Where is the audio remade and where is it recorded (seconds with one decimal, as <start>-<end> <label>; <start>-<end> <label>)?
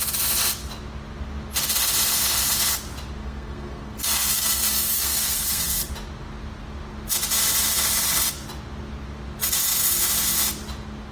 0.0-3.2 recorded; 3.2-5.9 remade; 5.9-11.1 recorded